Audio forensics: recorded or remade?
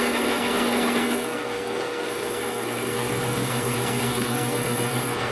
remade